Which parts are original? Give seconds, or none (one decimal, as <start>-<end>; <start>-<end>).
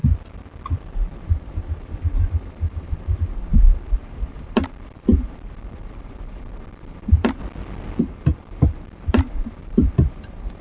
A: 0.0-1.2; 7.4-8.0